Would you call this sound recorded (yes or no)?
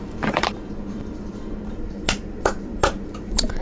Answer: no